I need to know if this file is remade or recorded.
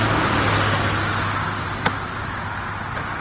recorded